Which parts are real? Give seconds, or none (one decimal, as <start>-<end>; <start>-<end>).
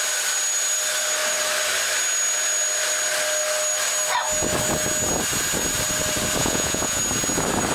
0.0-6.4; 7.0-7.7